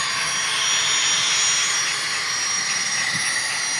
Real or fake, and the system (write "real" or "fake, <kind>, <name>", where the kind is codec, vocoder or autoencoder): real